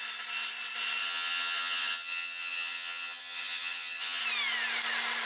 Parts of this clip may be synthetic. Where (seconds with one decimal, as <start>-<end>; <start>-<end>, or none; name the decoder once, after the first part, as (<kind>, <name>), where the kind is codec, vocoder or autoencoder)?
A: 1.0-4.2 (vocoder, HiFi-GAN)